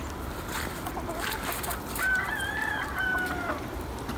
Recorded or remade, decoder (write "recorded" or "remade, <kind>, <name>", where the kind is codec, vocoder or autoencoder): recorded